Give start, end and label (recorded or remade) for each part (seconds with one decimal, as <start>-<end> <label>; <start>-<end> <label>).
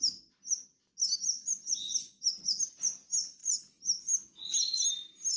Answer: 0.0-5.4 recorded